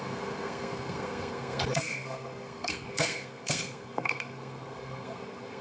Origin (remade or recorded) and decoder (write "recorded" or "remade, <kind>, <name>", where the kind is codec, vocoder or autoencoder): remade, codec, SNAC